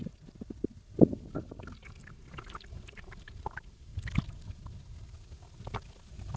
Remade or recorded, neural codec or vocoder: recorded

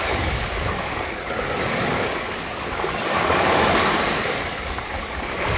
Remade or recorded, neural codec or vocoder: remade, codec, DAC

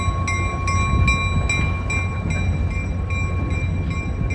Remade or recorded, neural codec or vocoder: recorded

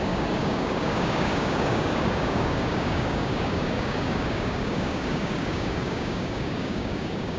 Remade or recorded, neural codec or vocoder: remade, codec, DAC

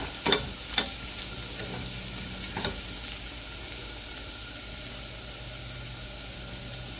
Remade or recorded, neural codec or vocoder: recorded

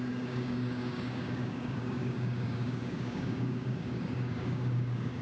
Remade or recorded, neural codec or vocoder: remade, codec, DAC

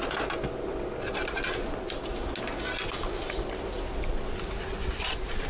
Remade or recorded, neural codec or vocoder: recorded